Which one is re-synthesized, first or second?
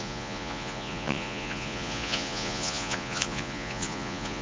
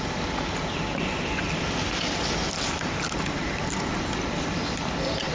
first